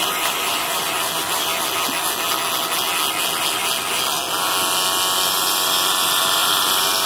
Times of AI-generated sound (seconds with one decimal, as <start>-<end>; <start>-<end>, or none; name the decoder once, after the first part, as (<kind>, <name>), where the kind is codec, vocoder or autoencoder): 0.0-1.5 (vocoder, BigVGAN v2); 5.3-7.1